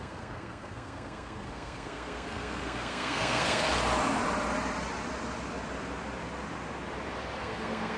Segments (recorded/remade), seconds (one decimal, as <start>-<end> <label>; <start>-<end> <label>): 0.0-3.6 remade; 3.6-7.4 recorded; 7.4-8.0 remade